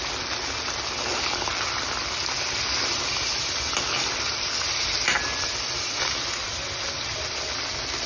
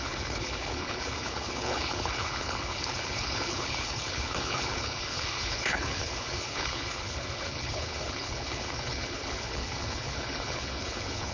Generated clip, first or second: second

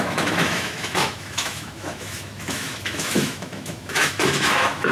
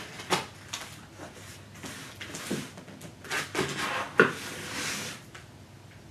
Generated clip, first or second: first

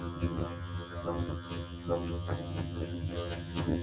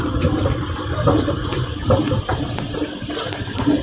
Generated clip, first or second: first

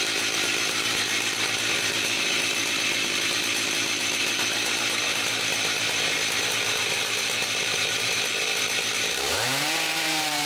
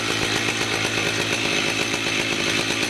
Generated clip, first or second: first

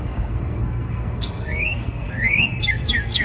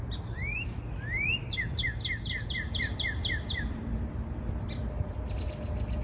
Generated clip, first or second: first